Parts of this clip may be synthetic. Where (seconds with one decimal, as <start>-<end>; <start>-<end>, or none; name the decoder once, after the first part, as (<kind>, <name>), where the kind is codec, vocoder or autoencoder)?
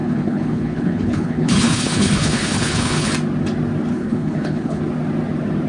0.0-3.1 (codec, HILCodec); 3.9-4.8